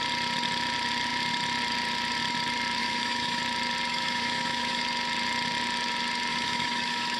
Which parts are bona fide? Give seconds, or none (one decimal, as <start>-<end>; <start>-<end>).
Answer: 0.0-2.8; 3.4-3.9; 4.8-6.3